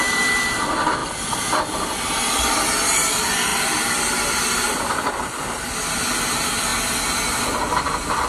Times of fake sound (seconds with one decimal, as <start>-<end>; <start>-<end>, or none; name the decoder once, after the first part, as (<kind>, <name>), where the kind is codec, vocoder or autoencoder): 1.0-1.6 (vocoder, BigVGAN v2)